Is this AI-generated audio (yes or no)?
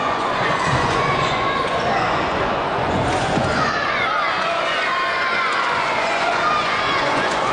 yes